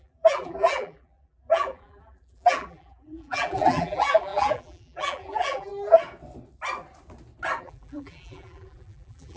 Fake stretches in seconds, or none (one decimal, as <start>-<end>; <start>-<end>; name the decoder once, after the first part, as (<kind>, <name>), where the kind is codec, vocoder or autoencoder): 0.0-5.7 (vocoder, BigVGAN v2); 7.6-9.4